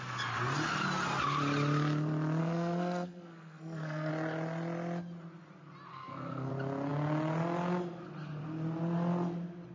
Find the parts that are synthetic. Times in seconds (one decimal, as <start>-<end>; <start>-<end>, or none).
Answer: 2.4-4.1; 5.9-6.5